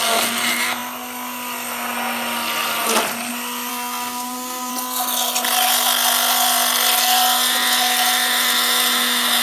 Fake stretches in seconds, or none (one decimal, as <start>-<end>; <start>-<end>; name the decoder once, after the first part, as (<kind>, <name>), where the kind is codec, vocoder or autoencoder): 3.7-4.7 (codec, SNAC)